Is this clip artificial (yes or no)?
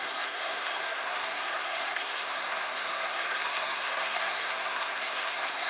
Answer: yes